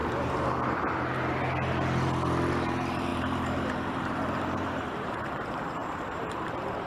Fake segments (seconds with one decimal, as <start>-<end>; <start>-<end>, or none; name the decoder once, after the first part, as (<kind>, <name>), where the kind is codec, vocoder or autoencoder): 2.5-6.9 (vocoder, BigVGAN v2)